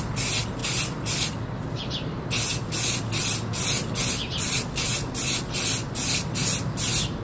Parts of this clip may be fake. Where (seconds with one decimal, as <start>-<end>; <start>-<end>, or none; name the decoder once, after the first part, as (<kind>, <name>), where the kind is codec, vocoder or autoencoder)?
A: none